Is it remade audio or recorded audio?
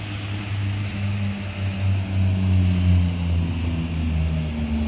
recorded